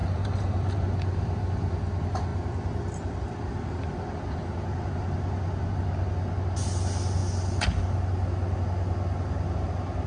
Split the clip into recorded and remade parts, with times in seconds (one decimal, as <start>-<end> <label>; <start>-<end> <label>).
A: 0.0-1.4 remade; 1.4-10.1 recorded